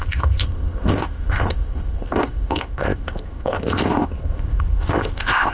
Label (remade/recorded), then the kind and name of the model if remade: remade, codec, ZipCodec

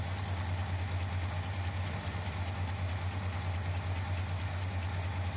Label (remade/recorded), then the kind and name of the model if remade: recorded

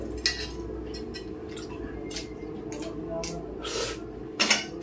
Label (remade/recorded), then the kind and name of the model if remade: recorded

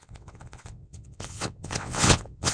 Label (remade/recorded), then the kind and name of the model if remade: remade, vocoder, WaveNeXt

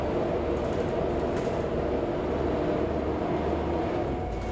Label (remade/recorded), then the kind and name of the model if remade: recorded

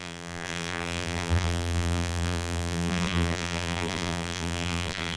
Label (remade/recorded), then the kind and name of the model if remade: remade, vocoder, BigVGAN v2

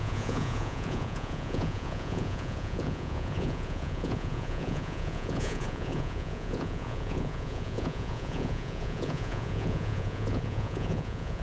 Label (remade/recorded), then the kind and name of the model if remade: remade, vocoder, Vocos